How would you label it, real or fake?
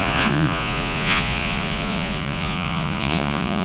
fake